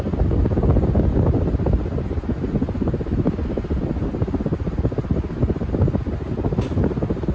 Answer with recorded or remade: recorded